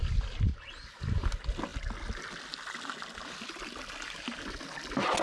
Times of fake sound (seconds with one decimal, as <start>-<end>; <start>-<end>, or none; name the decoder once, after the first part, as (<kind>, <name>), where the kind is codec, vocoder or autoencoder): none